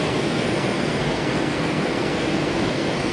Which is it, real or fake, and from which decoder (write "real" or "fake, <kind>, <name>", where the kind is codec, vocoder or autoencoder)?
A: fake, codec, SNAC